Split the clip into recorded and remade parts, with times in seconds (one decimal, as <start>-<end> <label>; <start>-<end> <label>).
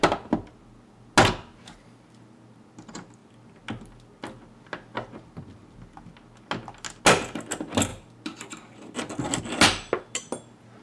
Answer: 0.0-10.8 recorded